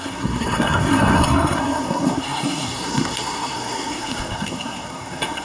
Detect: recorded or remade remade